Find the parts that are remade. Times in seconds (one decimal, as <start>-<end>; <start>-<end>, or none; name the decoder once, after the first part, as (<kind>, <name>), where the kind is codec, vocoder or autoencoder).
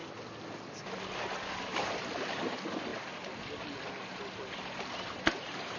none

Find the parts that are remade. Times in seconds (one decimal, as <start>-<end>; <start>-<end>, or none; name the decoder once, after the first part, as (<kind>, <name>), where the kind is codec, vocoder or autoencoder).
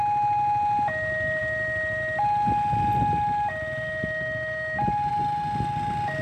none